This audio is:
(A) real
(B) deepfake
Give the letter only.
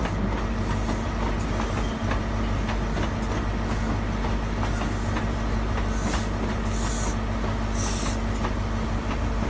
A